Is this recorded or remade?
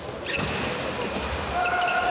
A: recorded